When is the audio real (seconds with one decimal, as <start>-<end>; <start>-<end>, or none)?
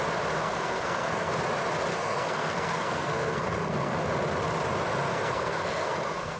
0.0-0.4; 1.3-1.9; 3.9-5.1